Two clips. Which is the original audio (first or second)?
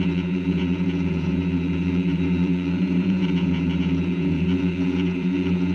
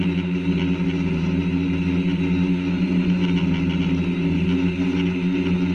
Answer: second